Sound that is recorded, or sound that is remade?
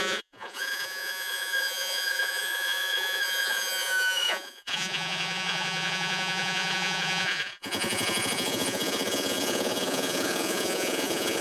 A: remade